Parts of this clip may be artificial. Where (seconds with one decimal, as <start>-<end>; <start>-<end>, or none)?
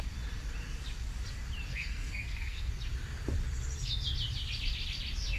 1.7-2.7